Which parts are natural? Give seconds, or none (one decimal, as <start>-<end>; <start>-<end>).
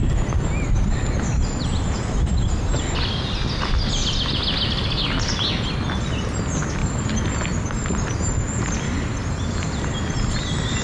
0.0-10.8